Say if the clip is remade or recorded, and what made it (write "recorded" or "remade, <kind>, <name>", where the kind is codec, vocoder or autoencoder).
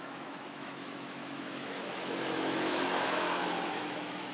remade, autoencoder, DAC-VAE